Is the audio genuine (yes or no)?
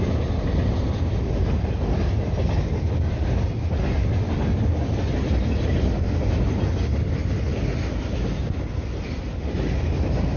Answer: yes